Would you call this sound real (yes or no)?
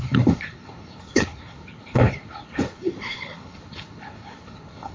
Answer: no